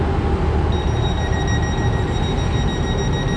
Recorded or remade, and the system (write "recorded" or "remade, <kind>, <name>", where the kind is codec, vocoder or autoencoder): recorded